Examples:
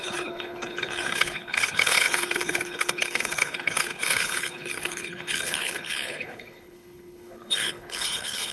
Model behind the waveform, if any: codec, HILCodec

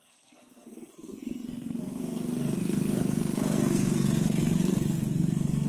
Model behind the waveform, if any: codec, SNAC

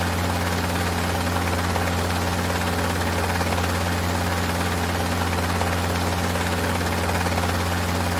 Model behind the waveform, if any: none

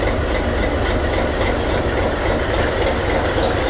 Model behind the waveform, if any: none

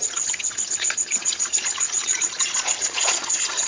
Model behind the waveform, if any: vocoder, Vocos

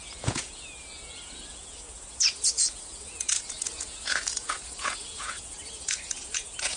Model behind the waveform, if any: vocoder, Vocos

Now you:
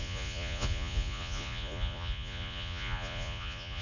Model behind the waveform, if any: vocoder, Vocos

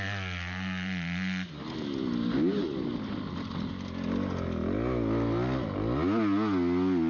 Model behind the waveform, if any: none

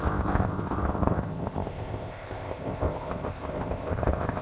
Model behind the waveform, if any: codec, ZipCodec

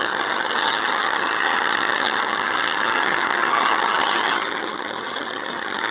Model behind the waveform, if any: vocoder, HiFi-GAN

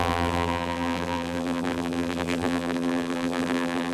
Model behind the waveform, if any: vocoder, BigVGAN v2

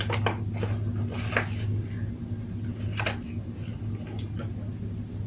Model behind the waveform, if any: none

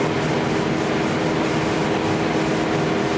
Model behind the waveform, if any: none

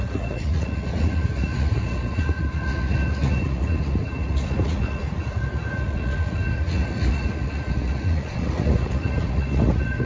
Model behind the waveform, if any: vocoder, Vocos